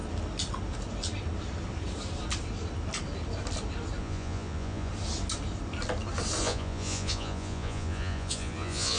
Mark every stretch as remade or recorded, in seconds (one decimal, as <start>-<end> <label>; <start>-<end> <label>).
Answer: 0.0-4.0 recorded; 4.0-4.9 remade; 4.9-6.4 recorded; 6.4-9.0 remade